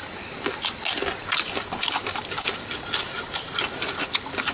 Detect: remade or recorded recorded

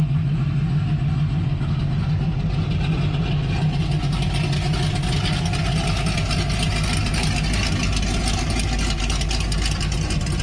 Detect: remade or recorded recorded